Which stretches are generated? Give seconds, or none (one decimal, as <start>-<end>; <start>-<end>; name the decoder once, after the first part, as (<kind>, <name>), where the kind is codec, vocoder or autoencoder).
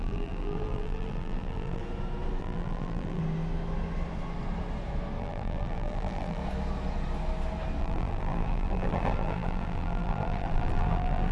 0.0-1.8 (vocoder, BigVGAN v2); 2.4-3.2; 5.2-6.4; 7.8-11.3